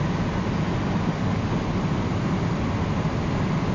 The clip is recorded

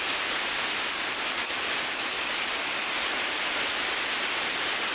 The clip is recorded